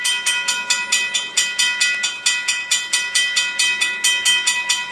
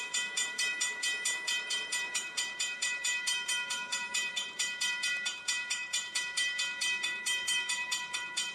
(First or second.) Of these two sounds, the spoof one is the second